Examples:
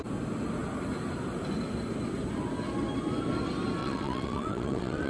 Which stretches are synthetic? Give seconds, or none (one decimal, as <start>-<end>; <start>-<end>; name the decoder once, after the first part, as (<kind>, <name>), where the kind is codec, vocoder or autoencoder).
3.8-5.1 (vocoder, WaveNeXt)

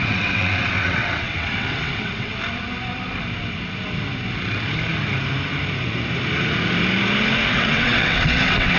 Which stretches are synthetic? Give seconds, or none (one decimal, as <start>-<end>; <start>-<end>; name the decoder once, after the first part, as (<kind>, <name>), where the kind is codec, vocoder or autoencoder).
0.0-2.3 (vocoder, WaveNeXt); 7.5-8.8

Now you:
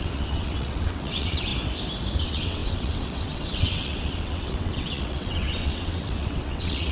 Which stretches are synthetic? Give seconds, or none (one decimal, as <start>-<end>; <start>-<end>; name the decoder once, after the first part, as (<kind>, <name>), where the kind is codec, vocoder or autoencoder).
0.0-1.5 (vocoder, WaveNeXt); 2.2-6.9

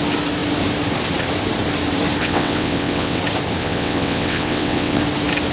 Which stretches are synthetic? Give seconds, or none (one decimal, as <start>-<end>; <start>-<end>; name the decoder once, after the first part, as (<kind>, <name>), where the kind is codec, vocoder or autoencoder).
2.2-3.2 (vocoder, WaveNeXt); 3.6-5.0